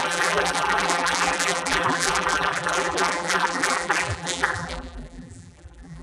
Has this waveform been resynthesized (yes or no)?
yes